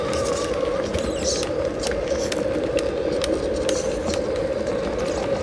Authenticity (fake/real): real